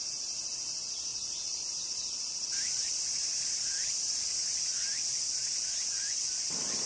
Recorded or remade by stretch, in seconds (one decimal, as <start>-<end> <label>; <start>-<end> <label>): 0.0-6.9 recorded